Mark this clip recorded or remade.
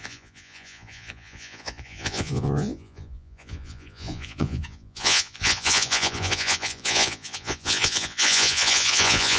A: remade